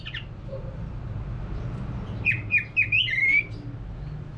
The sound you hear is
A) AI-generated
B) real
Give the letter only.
B